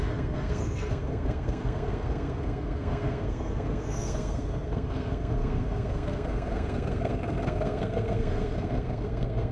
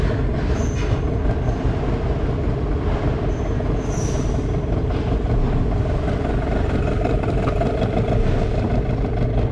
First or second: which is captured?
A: second